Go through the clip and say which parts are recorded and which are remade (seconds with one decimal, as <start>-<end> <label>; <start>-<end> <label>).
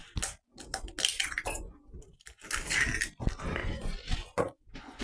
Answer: 0.0-1.1 recorded; 1.1-1.8 remade; 1.8-3.6 recorded; 3.6-5.0 remade